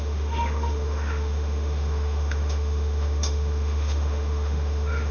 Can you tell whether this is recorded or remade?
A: remade